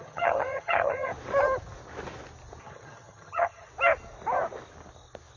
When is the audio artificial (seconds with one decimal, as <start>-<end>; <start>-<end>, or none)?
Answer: 0.0-1.1; 2.6-3.7